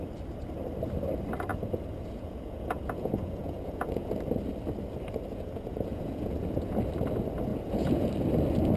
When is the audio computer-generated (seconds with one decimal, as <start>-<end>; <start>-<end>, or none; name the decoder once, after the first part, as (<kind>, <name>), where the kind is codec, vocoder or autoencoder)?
1.5-4.1 (vocoder, Vocos); 5.3-6.8; 7.5-8.1